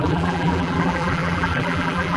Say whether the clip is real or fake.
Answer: fake